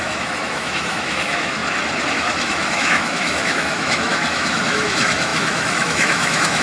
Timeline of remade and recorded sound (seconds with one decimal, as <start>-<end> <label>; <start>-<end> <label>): 0.0-1.6 remade; 1.6-2.1 recorded; 2.1-6.6 remade